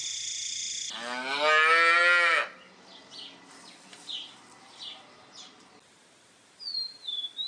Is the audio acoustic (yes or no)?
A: yes